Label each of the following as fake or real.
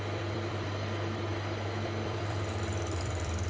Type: fake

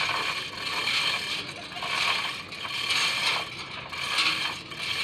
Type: real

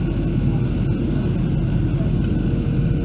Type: real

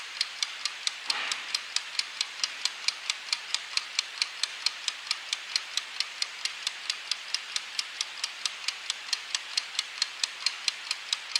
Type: fake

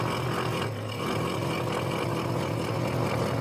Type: real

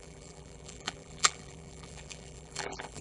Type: fake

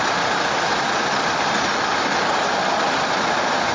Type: real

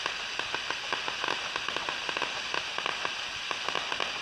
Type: real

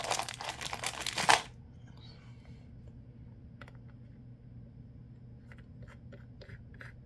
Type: real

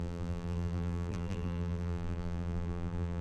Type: fake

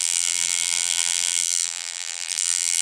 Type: fake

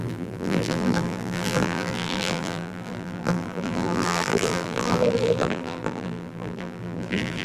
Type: fake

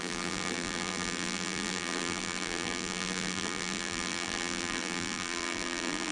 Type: fake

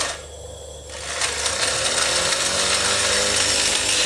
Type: real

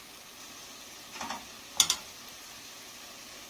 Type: real